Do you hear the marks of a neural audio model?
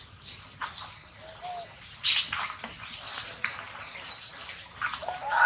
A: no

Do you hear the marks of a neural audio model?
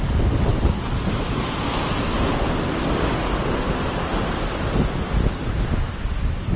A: no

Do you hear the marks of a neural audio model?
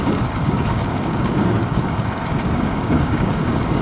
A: yes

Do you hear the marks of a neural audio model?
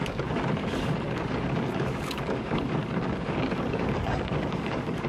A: yes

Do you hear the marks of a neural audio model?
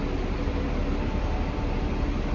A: no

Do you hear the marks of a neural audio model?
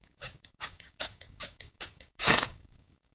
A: yes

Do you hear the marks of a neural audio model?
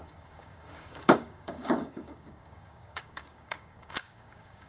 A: yes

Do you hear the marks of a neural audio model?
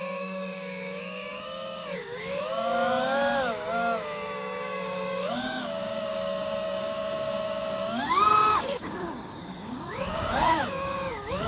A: yes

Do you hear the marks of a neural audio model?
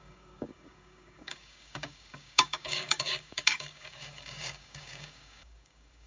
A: yes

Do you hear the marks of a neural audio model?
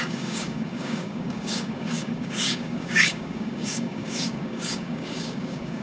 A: yes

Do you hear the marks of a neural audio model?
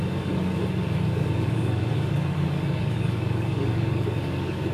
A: yes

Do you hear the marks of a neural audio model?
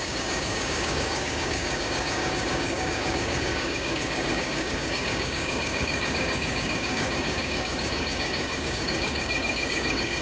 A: yes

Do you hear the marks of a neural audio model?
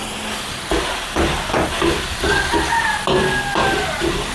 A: no